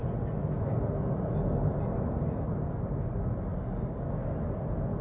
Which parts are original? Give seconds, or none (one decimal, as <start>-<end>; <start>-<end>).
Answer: 0.0-3.5; 4.3-5.0